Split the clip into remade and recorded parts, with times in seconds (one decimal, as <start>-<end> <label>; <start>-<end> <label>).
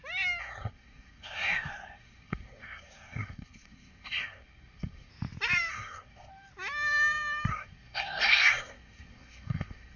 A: 0.0-0.4 recorded; 0.4-5.1 remade; 5.1-5.7 recorded; 5.7-6.3 remade; 6.3-7.5 recorded; 7.5-10.0 remade